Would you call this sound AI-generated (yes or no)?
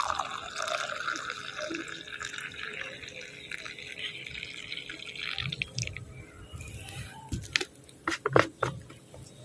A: no